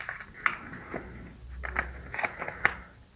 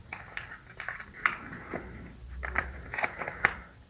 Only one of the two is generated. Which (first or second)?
second